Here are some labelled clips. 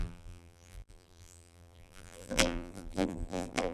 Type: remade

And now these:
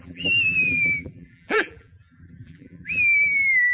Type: remade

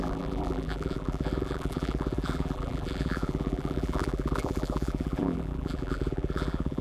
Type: remade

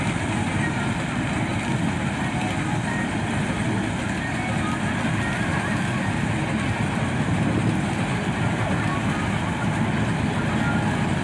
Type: recorded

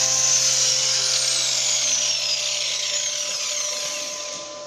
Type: recorded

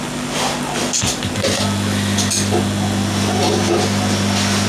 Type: recorded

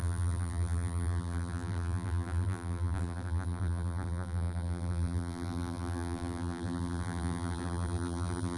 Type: remade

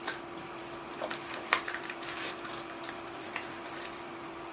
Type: remade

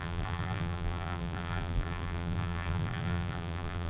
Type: remade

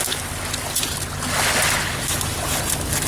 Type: recorded